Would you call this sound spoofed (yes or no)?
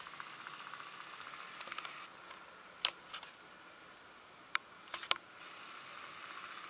no